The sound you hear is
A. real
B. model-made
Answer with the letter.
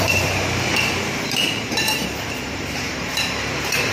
B